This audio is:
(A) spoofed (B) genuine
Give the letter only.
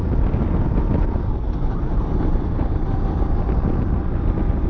B